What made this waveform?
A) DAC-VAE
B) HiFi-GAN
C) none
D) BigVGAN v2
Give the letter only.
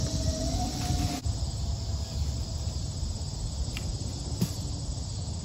C